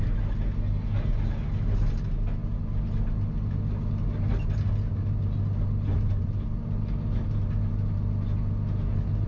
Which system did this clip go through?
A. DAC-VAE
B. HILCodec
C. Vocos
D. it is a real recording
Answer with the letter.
D